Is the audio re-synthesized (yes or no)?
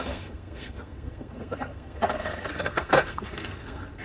yes